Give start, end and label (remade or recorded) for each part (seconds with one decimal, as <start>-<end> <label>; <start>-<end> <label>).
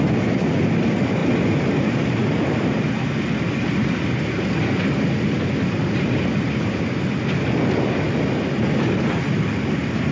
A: 0.0-10.1 recorded